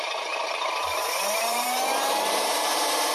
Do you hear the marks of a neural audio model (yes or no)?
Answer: yes